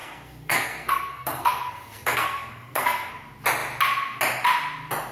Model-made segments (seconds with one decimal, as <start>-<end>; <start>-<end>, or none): 0.0-3.1